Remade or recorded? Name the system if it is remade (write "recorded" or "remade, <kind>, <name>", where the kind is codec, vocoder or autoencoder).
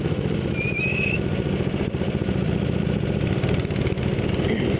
recorded